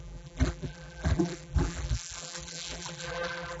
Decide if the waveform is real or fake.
fake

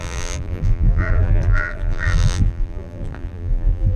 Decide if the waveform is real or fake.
fake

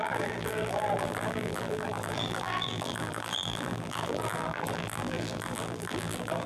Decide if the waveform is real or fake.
fake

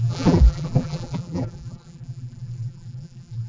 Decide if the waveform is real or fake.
fake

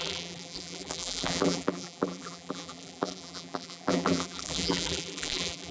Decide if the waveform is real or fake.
fake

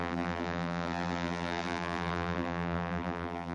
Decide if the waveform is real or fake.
fake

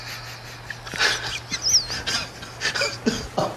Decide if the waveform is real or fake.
real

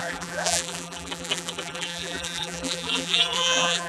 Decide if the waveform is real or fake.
fake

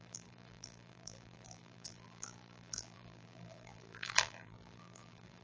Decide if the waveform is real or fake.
fake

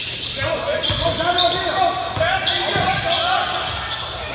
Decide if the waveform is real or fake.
real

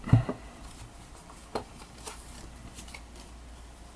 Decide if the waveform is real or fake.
fake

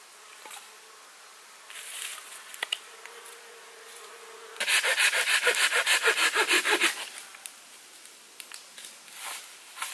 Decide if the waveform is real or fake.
real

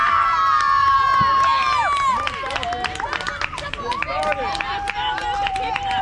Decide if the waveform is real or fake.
real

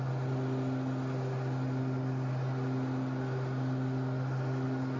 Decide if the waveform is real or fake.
real